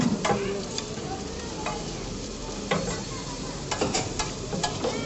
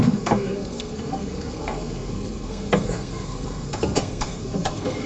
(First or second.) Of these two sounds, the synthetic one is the second